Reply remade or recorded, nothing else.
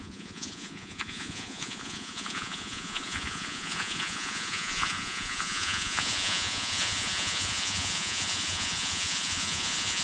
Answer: remade